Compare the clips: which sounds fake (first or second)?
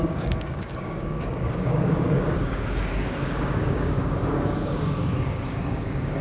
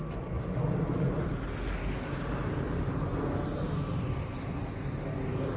first